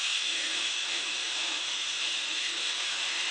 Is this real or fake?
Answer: fake